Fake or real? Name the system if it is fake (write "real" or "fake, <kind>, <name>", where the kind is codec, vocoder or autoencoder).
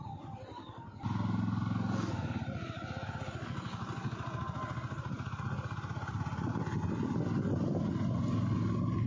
real